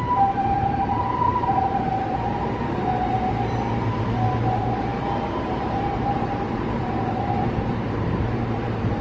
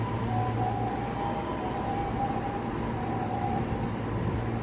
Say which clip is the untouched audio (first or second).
second